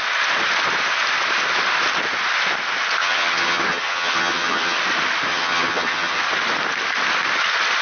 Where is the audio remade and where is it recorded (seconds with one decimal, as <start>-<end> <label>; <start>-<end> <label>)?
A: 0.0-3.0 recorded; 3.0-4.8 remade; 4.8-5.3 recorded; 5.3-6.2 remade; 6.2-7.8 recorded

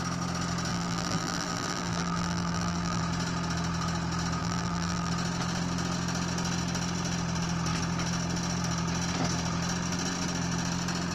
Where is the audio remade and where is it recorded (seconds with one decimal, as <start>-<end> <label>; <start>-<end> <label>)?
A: 0.0-0.7 recorded; 0.7-3.0 remade; 3.0-4.4 recorded; 4.4-5.1 remade; 5.1-11.1 recorded

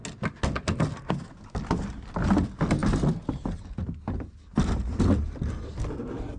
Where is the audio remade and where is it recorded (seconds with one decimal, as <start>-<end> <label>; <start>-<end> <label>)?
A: 0.0-6.4 recorded

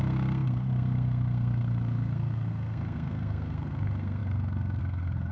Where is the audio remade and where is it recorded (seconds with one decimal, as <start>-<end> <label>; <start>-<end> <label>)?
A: 0.0-5.3 remade

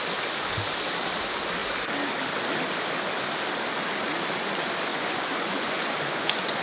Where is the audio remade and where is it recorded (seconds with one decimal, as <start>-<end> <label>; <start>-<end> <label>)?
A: 0.0-4.9 recorded; 4.9-6.6 remade